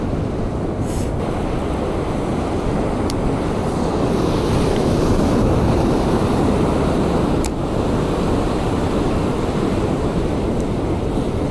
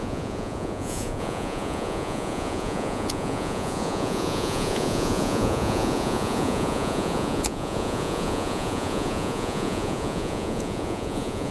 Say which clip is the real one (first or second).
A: first